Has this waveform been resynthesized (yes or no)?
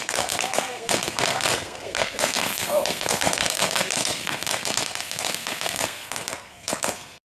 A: yes